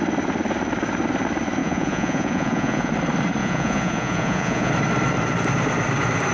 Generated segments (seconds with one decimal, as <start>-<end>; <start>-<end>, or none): 1.6-2.9; 3.4-4.7